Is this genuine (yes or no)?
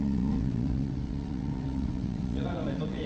no